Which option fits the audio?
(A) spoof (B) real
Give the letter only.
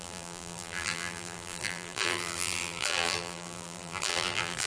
A